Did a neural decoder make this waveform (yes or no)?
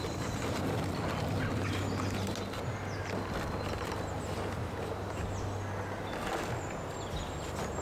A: no